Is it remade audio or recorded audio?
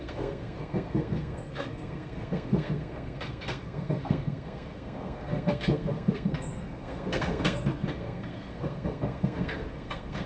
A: remade